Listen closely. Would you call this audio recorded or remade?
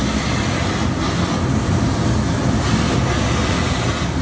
recorded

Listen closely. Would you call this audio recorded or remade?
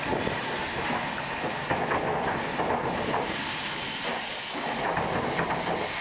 recorded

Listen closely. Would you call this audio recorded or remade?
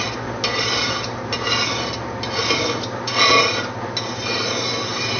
recorded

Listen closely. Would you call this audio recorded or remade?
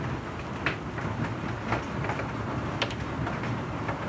recorded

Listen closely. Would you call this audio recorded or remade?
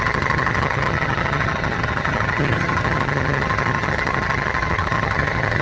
remade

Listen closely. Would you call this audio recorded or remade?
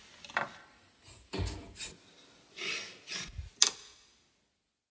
recorded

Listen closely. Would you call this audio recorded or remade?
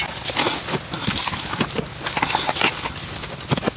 recorded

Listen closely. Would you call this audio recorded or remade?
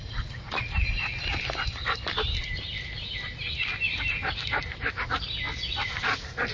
recorded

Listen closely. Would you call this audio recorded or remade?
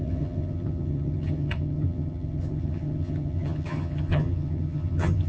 remade